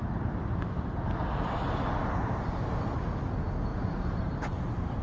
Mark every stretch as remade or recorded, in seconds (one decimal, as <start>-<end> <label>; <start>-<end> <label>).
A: 0.0-3.7 recorded; 3.7-4.6 remade; 4.6-5.0 recorded